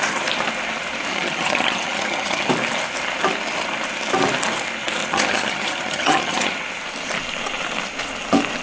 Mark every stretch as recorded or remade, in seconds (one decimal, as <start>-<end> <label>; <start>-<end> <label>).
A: 0.0-1.1 recorded; 1.1-2.5 remade; 2.5-5.1 recorded; 5.1-6.5 remade; 6.5-8.6 recorded